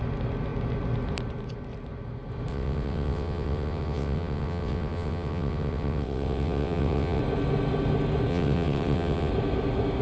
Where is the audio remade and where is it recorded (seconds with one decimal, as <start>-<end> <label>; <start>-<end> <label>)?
0.0-2.5 recorded; 2.5-7.2 remade; 7.2-8.3 recorded; 8.3-9.3 remade; 9.3-10.0 recorded